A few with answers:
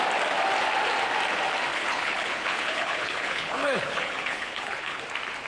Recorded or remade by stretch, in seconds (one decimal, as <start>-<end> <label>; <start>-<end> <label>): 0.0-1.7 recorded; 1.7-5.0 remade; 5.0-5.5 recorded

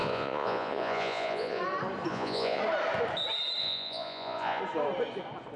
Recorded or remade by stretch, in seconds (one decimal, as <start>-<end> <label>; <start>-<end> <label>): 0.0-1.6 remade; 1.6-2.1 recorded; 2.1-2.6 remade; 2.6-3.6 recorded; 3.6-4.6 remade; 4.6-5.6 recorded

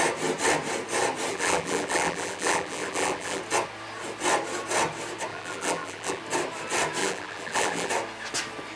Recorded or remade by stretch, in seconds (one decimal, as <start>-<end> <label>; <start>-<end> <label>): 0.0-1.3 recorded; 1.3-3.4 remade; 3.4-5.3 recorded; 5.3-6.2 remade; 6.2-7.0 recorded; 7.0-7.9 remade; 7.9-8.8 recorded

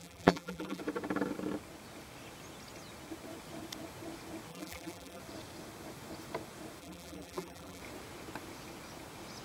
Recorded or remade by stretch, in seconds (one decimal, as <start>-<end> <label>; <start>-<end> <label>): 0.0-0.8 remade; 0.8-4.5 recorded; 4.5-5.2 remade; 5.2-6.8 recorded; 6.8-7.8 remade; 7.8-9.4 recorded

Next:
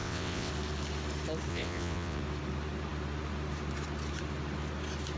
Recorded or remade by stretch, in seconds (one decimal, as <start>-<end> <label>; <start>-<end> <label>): 0.0-0.5 remade; 0.5-1.5 recorded; 1.5-2.2 remade; 2.2-5.2 recorded

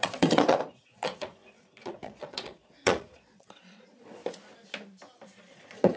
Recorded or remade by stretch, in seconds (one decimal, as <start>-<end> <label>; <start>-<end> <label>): 0.0-4.2 remade; 4.2-5.4 recorded; 5.4-6.0 remade

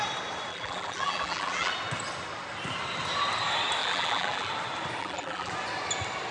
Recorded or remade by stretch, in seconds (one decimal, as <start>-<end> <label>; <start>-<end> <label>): 0.0-0.5 recorded; 0.5-1.7 remade; 1.7-3.8 recorded; 3.8-4.5 remade; 4.5-5.0 recorded; 5.0-5.5 remade; 5.5-6.3 recorded